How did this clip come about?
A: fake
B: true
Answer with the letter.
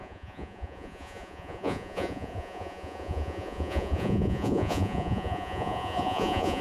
A